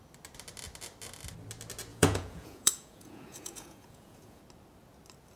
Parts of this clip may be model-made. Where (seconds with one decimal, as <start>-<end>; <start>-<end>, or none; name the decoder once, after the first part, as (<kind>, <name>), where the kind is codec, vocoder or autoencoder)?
1.9-4.4 (vocoder, Vocos)